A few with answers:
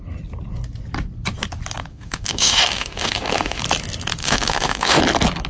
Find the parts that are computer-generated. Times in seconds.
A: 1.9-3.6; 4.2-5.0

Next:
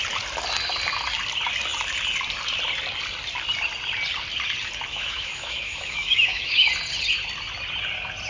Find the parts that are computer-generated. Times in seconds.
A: 4.9-6.7

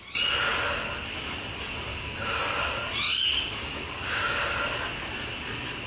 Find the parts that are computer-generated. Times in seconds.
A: 1.9-2.4; 3.1-4.6

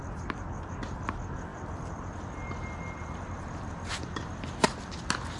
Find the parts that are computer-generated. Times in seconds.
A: none

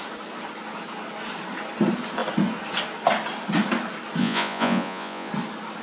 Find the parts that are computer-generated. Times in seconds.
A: 4.2-5.3